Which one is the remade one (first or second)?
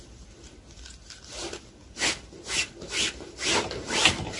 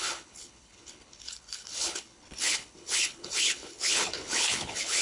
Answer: second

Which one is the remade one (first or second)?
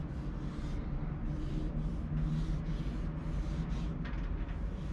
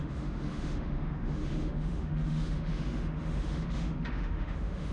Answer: second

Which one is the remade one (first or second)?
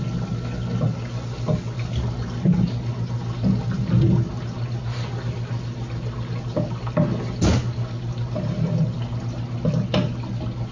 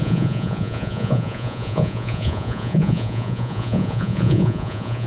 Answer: second